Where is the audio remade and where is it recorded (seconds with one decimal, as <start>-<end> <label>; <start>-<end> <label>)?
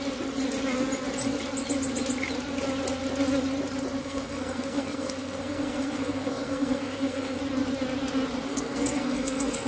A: 0.0-4.0 recorded; 4.0-7.4 remade; 7.4-8.5 recorded; 8.5-9.7 remade